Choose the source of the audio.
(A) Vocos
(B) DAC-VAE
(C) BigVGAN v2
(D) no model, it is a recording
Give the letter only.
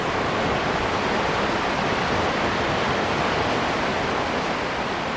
C